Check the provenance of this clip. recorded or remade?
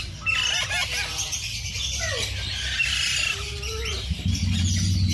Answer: recorded